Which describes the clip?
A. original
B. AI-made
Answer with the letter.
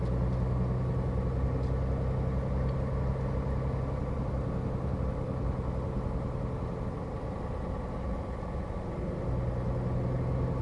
A